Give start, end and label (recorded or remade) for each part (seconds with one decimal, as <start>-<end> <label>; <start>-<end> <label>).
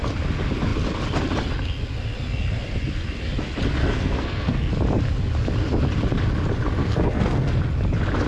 0.0-3.8 recorded; 3.8-4.7 remade; 4.7-6.8 recorded; 6.8-7.6 remade; 7.6-8.3 recorded